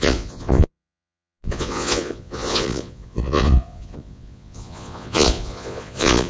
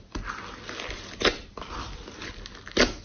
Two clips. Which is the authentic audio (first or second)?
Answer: second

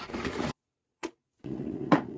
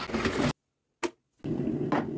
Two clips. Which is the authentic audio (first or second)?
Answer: second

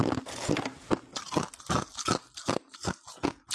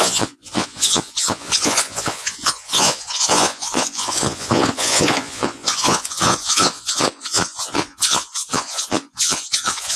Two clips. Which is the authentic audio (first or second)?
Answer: first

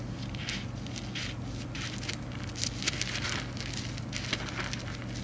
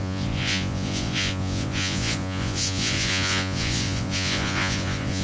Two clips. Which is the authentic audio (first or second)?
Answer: first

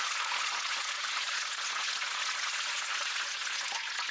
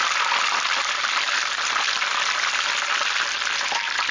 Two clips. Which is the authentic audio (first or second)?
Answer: second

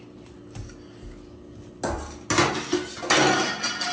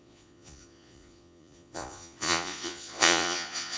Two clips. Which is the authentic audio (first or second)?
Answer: first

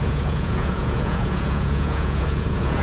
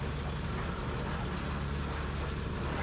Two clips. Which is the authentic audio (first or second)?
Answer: second